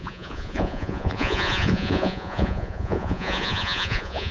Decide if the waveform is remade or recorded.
remade